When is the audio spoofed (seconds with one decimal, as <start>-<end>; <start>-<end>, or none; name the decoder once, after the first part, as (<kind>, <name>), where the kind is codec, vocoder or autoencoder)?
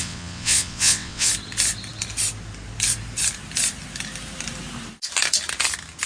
0.0-1.3 (vocoder, WaveNeXt)